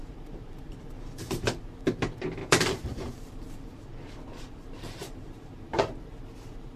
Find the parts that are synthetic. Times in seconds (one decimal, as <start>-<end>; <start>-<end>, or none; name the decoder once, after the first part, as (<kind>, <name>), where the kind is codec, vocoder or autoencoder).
0.0-1.6 (vocoder, BigVGAN v2); 2.4-6.0